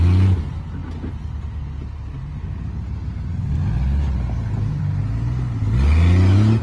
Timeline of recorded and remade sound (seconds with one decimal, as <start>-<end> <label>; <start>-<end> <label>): 0.0-6.6 recorded

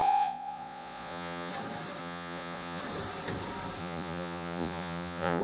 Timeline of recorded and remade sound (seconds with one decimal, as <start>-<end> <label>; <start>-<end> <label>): 0.0-1.5 remade; 1.5-2.0 recorded; 2.0-2.8 remade; 2.8-3.8 recorded; 3.8-5.4 remade

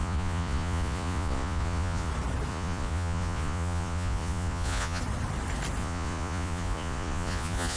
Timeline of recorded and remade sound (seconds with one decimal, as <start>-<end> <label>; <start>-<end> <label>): 0.0-2.1 remade; 2.1-2.5 recorded; 2.5-5.0 remade; 5.0-5.8 recorded; 5.8-7.8 remade

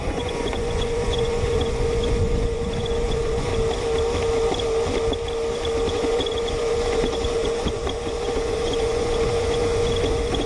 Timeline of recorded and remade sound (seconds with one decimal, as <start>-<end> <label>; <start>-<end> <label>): 0.0-3.5 remade; 3.5-5.9 recorded; 5.9-10.5 remade